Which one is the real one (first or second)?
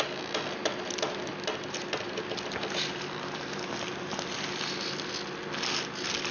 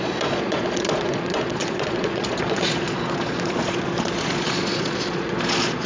first